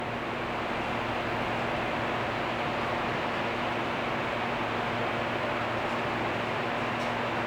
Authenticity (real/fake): real